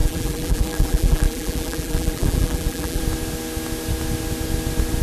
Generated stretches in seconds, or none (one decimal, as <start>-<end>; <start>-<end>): 0.0-3.0